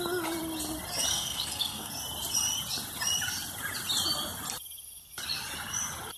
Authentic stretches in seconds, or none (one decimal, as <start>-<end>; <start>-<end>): 0.0-1.1; 1.9-6.2